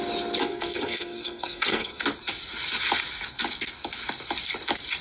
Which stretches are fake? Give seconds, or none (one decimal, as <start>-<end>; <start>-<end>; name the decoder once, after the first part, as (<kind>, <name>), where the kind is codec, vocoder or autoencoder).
0.4-2.0 (codec, SNAC)